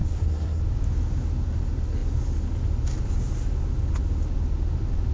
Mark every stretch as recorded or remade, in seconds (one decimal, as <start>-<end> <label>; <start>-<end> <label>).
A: 0.0-0.6 remade; 0.6-5.1 recorded

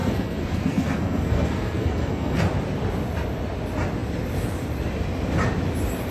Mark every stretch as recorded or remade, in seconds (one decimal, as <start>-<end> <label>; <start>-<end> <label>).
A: 0.0-2.4 remade; 2.4-6.1 recorded

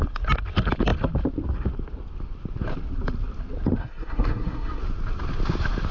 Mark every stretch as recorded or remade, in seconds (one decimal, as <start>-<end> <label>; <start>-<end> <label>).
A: 0.0-3.8 recorded; 3.8-4.8 remade; 4.8-5.9 recorded

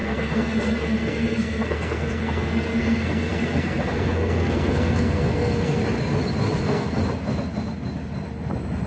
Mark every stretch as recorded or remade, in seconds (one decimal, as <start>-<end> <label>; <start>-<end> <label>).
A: 0.0-5.8 remade; 5.8-6.6 recorded; 6.6-7.0 remade; 7.0-8.9 recorded

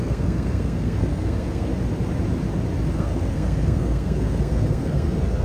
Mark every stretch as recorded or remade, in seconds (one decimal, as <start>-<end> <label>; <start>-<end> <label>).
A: 0.0-1.7 remade; 1.7-2.9 recorded; 2.9-5.4 remade

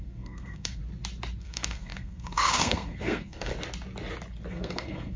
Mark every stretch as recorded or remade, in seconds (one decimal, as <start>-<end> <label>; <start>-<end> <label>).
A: 0.0-0.8 remade; 0.8-1.4 recorded; 1.4-3.5 remade; 3.5-4.5 recorded; 4.5-5.2 remade